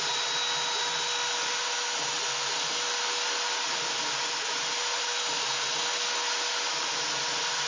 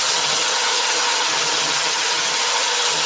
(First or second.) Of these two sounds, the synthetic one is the second